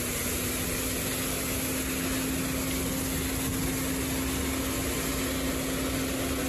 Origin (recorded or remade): recorded